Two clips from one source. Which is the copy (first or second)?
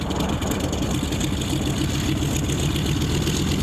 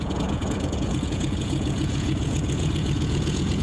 second